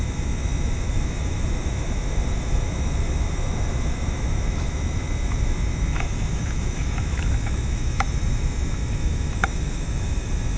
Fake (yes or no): yes